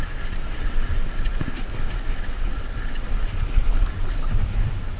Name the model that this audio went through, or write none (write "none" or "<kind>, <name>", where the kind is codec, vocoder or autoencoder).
none